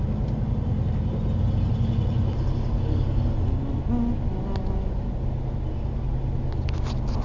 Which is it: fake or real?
real